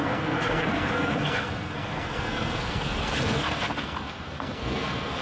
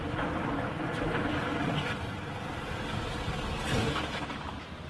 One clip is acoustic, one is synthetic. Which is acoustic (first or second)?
second